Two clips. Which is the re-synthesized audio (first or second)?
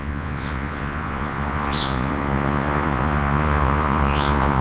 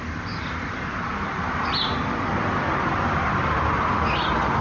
first